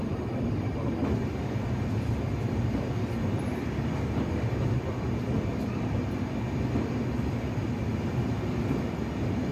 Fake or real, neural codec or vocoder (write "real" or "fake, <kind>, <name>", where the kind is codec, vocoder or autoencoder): real